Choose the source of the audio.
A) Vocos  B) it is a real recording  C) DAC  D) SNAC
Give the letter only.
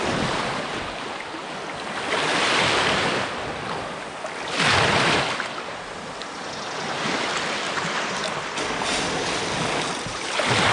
B